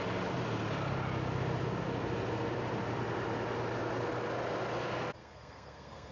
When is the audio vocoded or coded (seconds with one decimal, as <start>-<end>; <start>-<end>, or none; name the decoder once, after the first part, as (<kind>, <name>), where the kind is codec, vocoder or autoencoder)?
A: 5.2-6.1 (codec, SNAC)